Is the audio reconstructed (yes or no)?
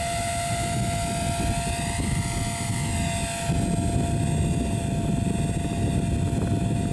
no